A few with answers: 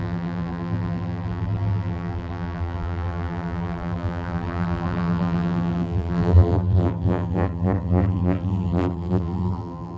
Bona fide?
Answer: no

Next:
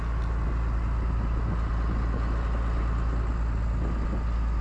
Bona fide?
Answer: yes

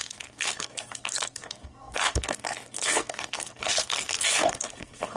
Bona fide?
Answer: no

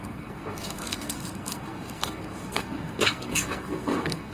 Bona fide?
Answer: no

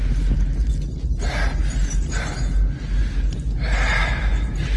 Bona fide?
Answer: yes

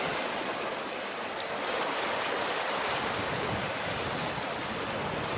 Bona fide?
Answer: yes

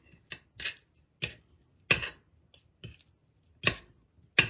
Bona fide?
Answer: yes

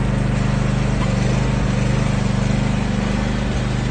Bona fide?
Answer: yes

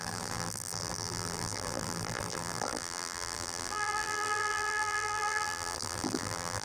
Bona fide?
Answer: no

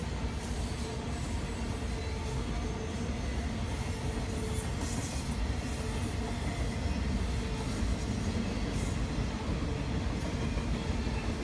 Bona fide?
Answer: yes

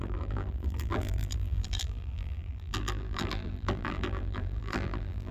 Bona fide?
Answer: no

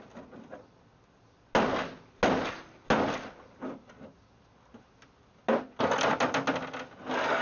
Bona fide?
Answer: yes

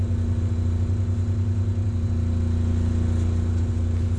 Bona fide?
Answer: yes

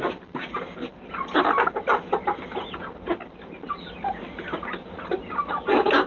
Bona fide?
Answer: yes